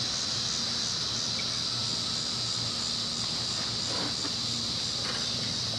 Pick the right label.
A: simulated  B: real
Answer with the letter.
B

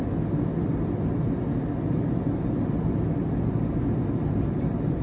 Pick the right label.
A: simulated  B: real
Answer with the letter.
B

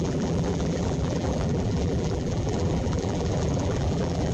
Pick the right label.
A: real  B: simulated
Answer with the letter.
B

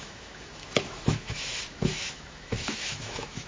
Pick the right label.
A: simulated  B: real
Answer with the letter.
A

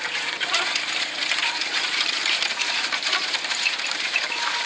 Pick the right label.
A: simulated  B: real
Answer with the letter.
A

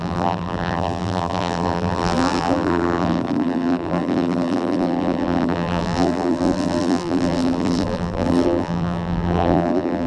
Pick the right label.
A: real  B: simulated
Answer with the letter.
B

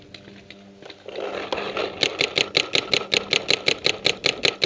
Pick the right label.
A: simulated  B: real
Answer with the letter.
B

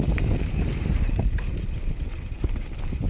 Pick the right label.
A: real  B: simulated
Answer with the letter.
B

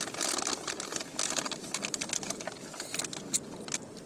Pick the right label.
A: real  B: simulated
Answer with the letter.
A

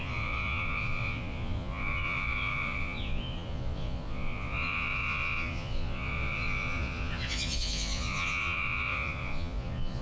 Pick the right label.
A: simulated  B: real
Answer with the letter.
A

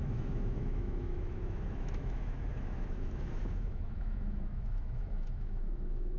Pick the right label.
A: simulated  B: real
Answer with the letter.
A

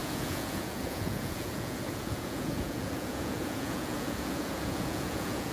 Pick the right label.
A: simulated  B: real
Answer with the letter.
A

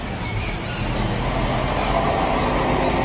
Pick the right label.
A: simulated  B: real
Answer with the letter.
B